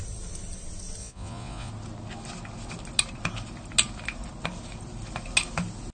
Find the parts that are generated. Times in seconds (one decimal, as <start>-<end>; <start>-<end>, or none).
1.0-1.7